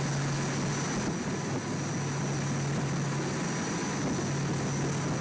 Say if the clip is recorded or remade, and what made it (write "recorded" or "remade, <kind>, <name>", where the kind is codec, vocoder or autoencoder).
recorded